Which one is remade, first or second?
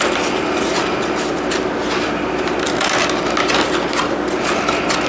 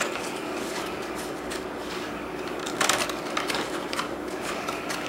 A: second